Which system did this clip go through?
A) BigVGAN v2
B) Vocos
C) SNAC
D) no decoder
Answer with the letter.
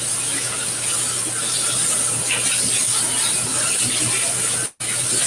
D